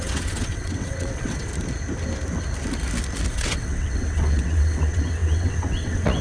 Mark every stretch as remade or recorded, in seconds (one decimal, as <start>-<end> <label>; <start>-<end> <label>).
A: 0.0-1.5 remade; 1.5-3.3 recorded; 3.3-6.2 remade

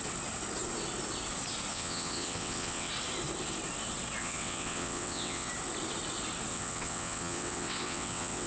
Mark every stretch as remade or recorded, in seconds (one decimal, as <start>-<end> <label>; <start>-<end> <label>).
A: 0.0-1.7 recorded; 1.7-2.9 remade; 2.9-4.2 recorded; 4.2-5.5 remade; 5.5-6.5 recorded; 6.5-8.5 remade